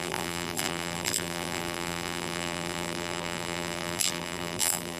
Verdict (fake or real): fake